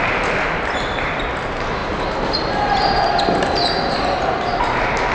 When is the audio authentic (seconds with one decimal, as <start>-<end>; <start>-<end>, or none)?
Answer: none